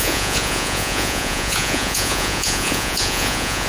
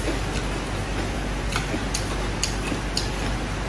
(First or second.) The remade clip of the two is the first